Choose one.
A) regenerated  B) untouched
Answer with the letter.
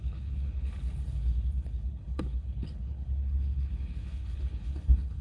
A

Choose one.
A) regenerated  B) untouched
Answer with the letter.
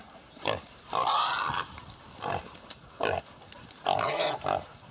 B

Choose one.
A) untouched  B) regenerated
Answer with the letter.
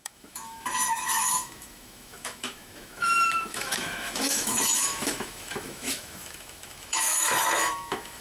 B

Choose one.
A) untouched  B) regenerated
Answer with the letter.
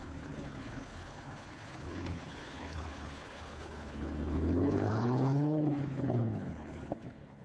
B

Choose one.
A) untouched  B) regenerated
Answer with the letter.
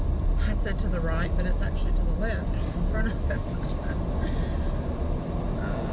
A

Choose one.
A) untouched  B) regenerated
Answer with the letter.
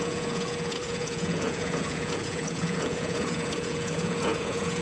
B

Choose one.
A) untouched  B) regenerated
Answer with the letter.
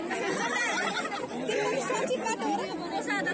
A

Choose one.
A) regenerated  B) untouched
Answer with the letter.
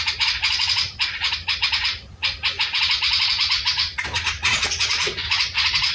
A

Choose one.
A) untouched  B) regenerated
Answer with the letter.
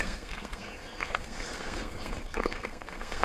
B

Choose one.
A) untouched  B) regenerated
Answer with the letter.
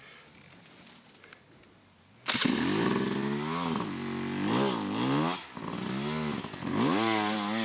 A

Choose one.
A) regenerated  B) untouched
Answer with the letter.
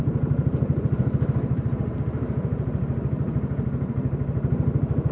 A